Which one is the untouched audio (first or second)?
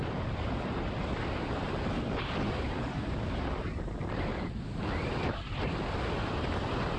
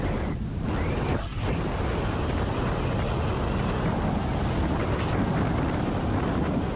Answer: second